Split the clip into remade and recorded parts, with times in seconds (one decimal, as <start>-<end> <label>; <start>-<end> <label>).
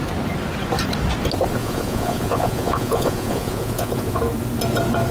0.0-1.6 recorded; 1.6-4.2 remade; 4.2-5.1 recorded